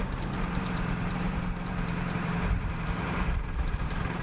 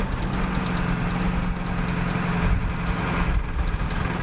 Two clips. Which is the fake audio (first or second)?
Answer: first